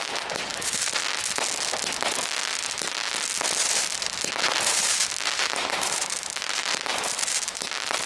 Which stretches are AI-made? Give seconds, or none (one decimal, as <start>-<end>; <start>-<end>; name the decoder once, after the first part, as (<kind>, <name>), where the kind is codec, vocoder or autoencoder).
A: 0.5-1.0 (vocoder, BigVGAN v2); 3.6-7.6